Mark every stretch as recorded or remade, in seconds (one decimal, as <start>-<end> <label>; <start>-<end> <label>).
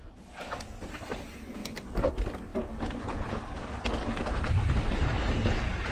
0.0-1.6 recorded; 1.6-2.1 remade; 2.1-4.2 recorded; 4.2-5.0 remade; 5.0-5.9 recorded